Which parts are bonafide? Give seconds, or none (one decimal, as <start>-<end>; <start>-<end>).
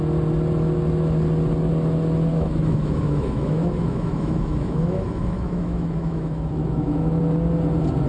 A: 0.0-2.3; 7.2-8.1